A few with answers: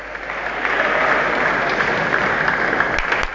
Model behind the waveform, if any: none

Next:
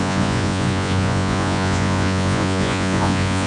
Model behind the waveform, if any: vocoder, Vocos